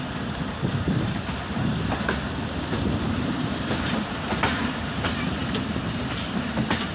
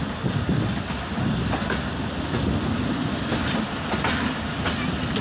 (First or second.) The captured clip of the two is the second